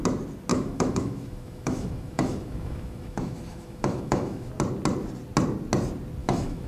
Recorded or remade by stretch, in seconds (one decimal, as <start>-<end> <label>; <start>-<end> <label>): 0.0-0.5 recorded; 0.5-4.5 remade; 4.5-6.2 recorded; 6.2-6.7 remade